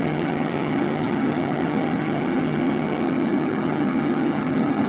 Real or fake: fake